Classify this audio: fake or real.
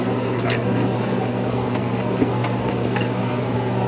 fake